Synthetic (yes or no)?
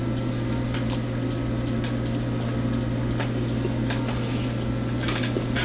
no